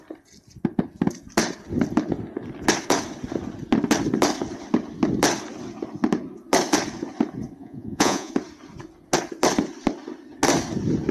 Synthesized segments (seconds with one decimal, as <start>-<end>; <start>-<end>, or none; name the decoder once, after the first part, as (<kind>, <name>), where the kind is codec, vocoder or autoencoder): 7.6-8.3 (vocoder, Vocos)